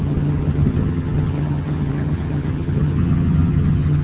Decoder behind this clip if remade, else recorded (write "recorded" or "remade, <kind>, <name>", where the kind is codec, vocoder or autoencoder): remade, vocoder, HiFi-GAN